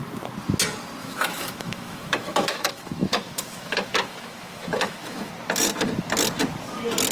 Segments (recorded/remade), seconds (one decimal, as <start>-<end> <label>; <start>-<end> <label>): 0.0-1.0 recorded; 1.0-5.3 remade; 5.3-7.1 recorded